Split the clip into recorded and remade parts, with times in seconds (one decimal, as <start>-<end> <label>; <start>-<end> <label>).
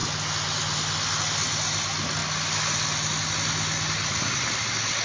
0.0-5.0 recorded